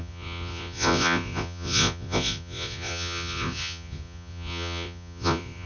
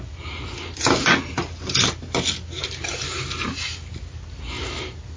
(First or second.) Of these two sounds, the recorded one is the second